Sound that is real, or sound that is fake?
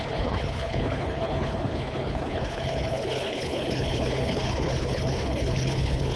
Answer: fake